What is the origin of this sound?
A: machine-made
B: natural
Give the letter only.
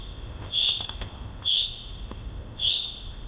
A